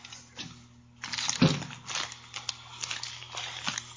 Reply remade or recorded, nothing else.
recorded